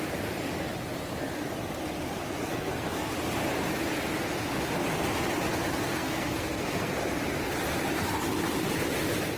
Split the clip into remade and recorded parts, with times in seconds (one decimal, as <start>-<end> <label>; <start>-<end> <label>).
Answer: 0.0-2.5 recorded; 2.5-3.1 remade; 3.1-5.9 recorded; 5.9-6.9 remade; 6.9-9.4 recorded